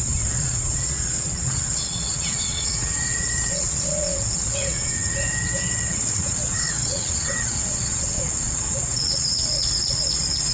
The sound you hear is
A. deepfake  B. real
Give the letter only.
A